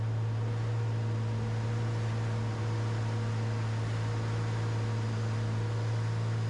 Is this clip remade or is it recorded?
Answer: recorded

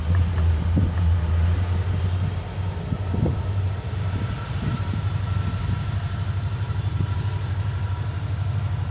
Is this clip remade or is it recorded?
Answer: remade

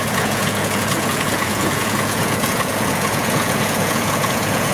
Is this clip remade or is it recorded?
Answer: remade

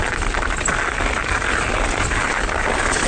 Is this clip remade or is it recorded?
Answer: recorded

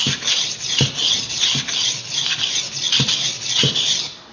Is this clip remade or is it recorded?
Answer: recorded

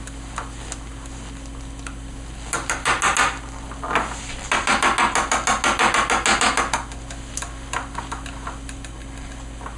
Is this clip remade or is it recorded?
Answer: recorded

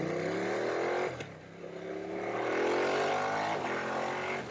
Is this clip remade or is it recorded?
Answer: recorded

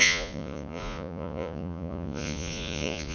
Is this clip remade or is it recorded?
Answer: remade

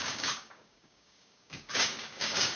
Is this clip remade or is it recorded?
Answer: remade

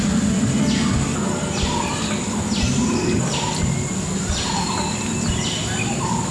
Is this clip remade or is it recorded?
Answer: recorded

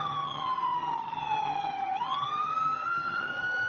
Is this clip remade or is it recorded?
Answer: remade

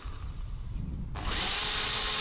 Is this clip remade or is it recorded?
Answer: recorded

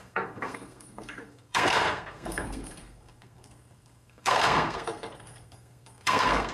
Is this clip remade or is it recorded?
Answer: remade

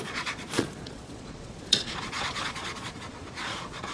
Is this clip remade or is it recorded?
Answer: remade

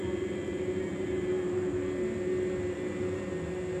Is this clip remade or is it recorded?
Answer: recorded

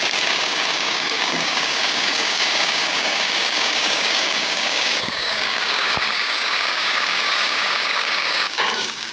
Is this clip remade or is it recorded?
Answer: remade